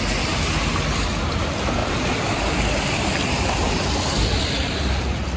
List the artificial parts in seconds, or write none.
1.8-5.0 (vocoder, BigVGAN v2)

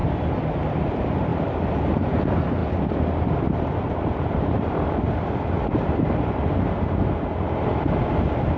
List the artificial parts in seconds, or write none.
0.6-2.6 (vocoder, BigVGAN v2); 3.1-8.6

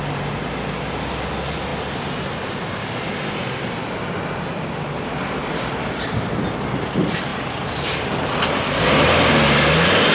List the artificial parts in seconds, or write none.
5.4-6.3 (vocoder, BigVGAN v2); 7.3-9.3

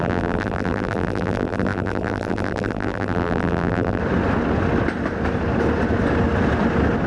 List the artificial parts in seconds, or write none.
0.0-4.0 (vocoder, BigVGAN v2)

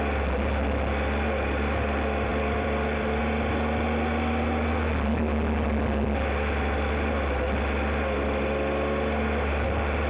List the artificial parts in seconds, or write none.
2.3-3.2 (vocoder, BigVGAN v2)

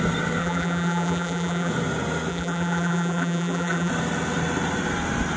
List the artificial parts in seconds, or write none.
0.4-1.7 (vocoder, BigVGAN v2); 2.3-3.9

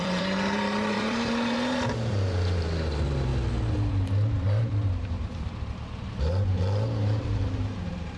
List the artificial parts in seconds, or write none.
0.0-3.3 (vocoder, BigVGAN v2); 3.9-8.2